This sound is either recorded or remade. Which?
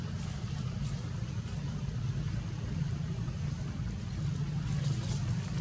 recorded